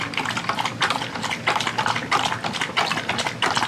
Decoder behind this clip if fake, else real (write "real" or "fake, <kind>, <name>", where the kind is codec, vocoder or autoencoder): real